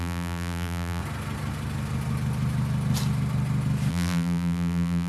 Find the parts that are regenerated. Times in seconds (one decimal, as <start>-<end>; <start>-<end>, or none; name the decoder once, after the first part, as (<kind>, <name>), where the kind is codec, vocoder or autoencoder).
0.0-1.0 (vocoder, BigVGAN v2); 3.9-5.1